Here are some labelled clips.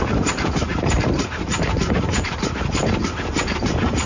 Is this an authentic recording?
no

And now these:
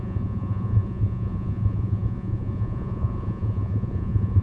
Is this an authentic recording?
no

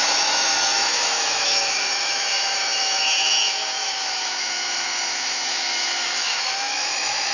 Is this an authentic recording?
no